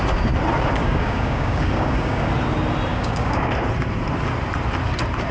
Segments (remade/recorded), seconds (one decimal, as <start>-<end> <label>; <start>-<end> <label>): 0.0-0.8 recorded; 0.8-2.3 remade; 2.3-2.9 recorded; 2.9-3.5 remade; 3.5-5.3 recorded